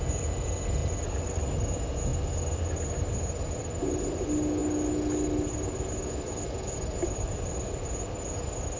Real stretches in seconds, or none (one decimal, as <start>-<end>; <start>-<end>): 0.0-0.8; 1.4-8.8